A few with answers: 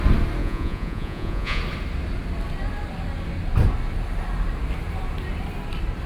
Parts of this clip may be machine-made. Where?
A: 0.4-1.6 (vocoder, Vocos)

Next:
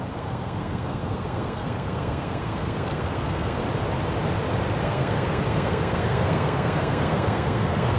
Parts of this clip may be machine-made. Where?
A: 0.0-3.6 (codec, SNAC); 4.8-8.0

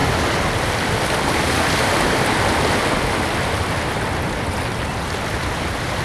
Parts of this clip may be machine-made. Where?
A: none

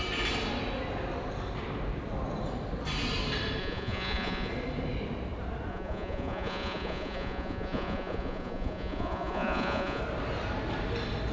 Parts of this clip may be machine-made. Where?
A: 3.6-4.5 (vocoder, Vocos); 5.7-10.0

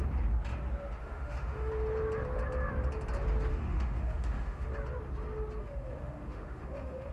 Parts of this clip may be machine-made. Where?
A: 1.0-1.7 (autoencoder, DAC-VAE); 3.5-4.7; 5.6-7.1

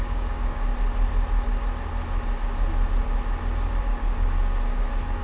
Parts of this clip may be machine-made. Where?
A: 0.0-0.7 (codec, DAC); 3.8-5.2

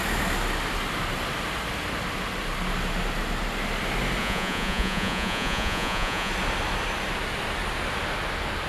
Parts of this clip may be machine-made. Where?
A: 4.2-6.3 (vocoder, Vocos)